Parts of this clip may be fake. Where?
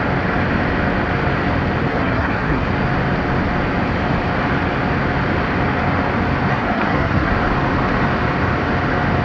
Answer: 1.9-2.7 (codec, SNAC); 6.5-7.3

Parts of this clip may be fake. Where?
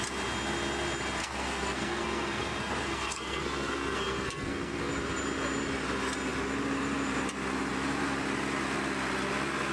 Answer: 1.2-4.9 (codec, SNAC)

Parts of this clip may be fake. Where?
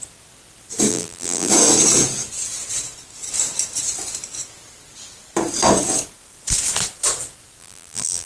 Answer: 0.9-1.5 (vocoder, BigVGAN v2); 7.6-8.3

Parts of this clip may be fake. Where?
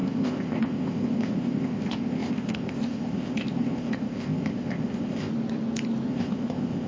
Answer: 0.0-5.3 (codec, ZipCodec); 6.1-6.9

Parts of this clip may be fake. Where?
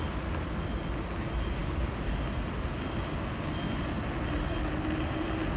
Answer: none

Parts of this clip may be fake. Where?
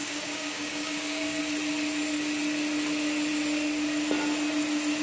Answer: 0.0-1.4 (codec, DAC)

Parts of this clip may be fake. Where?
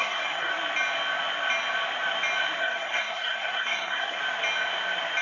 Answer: 0.0-0.5 (codec, SNAC); 2.6-4.2